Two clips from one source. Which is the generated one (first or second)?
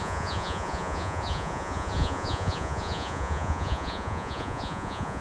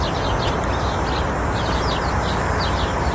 first